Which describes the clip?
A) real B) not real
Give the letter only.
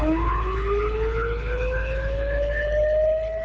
B